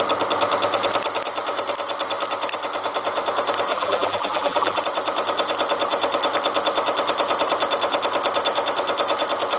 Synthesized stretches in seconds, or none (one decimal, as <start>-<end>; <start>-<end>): 3.7-4.8